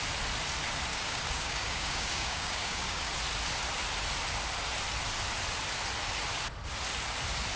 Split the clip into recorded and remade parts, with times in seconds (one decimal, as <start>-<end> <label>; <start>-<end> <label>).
0.0-0.9 recorded; 0.9-3.1 remade; 3.1-7.6 recorded